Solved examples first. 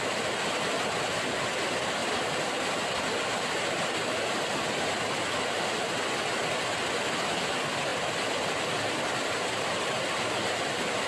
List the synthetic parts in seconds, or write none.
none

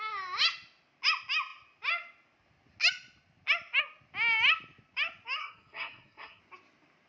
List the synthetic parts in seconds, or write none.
5.4-6.4 (codec, SNAC)

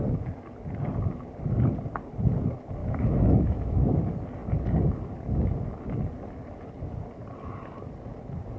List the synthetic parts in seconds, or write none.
2.8-4.0 (autoencoder, DAC-VAE)

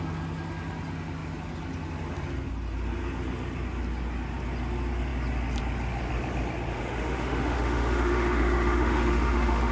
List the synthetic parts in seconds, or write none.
6.7-9.7 (autoencoder, DAC-VAE)

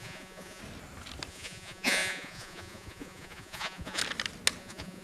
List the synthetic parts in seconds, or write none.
0.0-0.6 (vocoder, Vocos); 1.3-4.0; 4.6-5.0

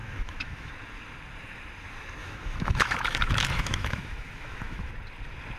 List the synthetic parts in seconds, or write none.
0.0-0.7 (autoencoder, DAC-VAE); 2.2-4.9